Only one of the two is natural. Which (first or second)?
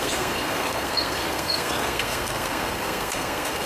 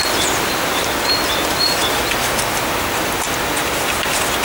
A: second